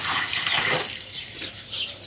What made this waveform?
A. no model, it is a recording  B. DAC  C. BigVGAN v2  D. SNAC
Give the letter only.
A